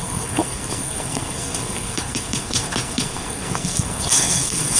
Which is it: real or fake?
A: fake